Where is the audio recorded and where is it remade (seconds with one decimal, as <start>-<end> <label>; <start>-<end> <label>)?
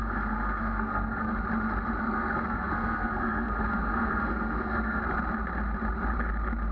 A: 0.0-1.3 remade; 1.3-2.0 recorded; 2.0-5.0 remade; 5.0-6.7 recorded